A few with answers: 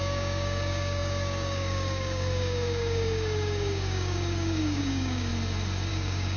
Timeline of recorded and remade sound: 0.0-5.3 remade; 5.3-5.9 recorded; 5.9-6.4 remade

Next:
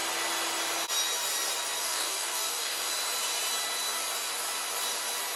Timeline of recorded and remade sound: 0.0-1.8 recorded; 1.8-2.9 remade; 2.9-5.4 recorded